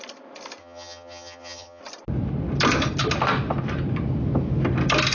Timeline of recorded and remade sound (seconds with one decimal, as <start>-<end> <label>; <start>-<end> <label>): 0.0-0.6 recorded; 0.6-1.8 remade; 1.8-5.1 recorded